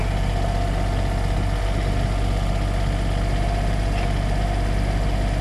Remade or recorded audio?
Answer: recorded